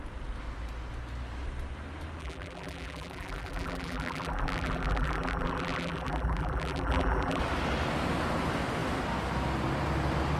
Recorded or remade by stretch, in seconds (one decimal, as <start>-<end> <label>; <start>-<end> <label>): 0.0-2.2 recorded; 2.2-7.4 remade; 7.4-10.4 recorded